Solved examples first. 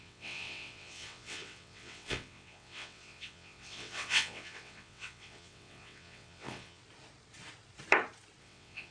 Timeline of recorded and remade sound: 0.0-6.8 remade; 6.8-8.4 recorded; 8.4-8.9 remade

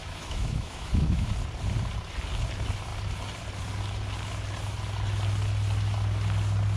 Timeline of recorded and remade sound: 0.0-1.3 remade; 1.3-6.8 recorded

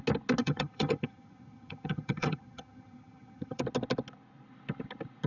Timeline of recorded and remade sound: 0.0-0.4 recorded; 0.4-3.6 remade; 3.6-5.3 recorded

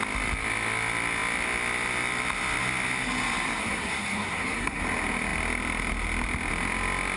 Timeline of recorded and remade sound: 0.0-3.6 recorded; 3.6-4.8 remade; 4.8-7.2 recorded